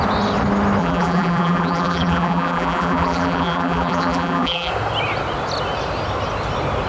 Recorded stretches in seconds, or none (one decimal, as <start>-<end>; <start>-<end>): 0.0-0.8; 4.7-6.9